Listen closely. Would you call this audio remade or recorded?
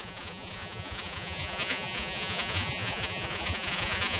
remade